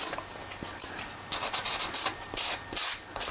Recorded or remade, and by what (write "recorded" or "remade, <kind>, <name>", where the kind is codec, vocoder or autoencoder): recorded